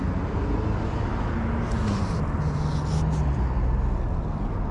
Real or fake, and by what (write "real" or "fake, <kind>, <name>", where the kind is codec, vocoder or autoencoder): real